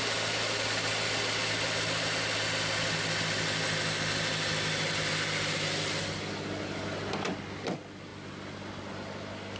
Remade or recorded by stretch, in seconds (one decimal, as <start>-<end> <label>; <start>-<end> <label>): 0.0-9.6 recorded